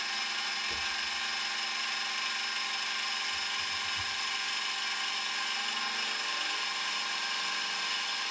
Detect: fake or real real